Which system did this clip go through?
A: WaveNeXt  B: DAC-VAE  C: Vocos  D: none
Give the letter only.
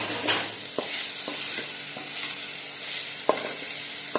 D